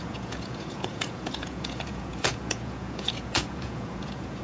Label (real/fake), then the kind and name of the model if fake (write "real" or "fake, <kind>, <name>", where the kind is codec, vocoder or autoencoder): fake, vocoder, Vocos